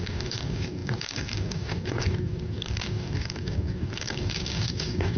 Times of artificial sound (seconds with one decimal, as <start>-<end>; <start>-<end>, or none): 0.0-5.2